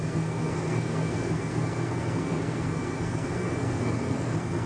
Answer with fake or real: fake